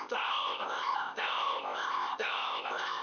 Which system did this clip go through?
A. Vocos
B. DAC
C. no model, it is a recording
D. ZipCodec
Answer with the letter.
D